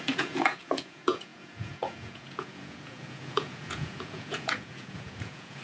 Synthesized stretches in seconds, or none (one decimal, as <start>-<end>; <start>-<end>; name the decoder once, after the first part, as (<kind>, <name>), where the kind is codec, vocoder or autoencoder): 0.0-5.6 (vocoder, Vocos)